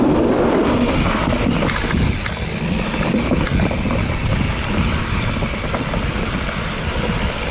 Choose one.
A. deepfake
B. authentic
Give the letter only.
B